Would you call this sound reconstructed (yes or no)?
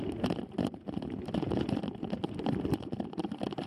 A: no